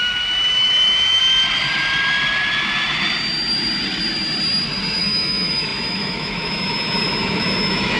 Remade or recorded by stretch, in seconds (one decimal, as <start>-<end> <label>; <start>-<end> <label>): 0.0-1.2 remade; 1.2-5.0 recorded; 5.0-8.0 remade